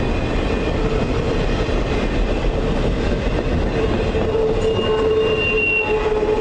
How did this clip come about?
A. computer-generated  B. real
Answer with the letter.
B